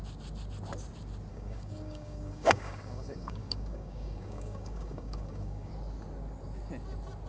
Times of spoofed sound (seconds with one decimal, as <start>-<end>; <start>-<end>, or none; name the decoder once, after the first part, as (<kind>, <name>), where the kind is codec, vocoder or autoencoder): 1.3-5.7 (codec, DAC)